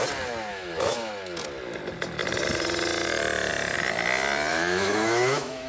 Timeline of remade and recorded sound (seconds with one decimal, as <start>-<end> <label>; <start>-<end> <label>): 0.0-0.5 recorded; 0.5-1.1 remade; 1.1-4.5 recorded; 4.5-5.7 remade